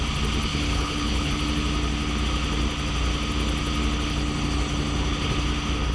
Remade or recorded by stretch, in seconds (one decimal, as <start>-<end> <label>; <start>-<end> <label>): 0.0-0.5 recorded; 0.5-1.3 remade; 1.3-5.9 recorded